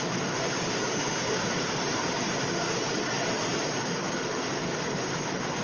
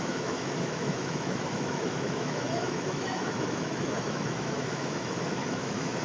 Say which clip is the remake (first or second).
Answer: second